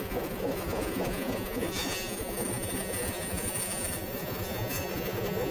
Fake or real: fake